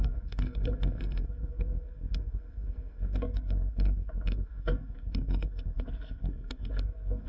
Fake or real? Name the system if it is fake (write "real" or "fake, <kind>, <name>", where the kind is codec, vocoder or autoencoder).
fake, codec, SNAC